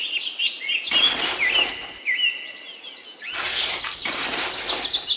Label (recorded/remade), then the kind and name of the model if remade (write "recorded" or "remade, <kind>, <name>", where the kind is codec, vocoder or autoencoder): recorded